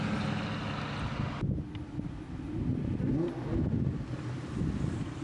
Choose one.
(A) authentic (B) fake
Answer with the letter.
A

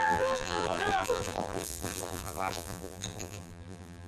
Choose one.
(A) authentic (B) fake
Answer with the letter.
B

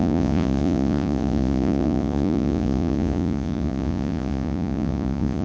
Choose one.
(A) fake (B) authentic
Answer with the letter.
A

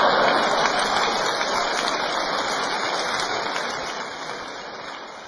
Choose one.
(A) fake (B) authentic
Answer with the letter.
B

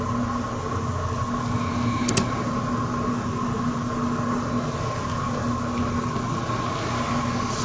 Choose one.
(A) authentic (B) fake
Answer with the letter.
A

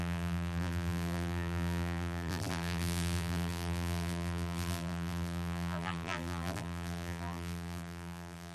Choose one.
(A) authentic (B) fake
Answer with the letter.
B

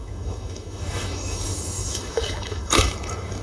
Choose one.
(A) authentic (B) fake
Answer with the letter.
B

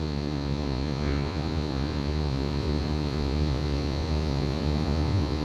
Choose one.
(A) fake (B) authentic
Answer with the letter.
A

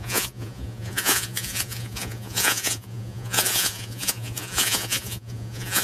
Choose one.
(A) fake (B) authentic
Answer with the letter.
A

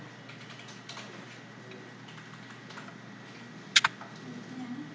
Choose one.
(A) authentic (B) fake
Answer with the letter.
A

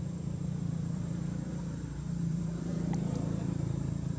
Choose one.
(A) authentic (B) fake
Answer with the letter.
B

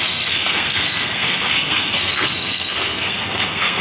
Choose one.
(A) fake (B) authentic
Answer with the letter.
A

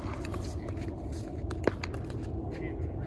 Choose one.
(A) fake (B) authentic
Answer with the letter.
B